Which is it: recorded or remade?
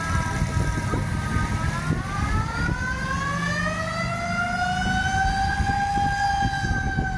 recorded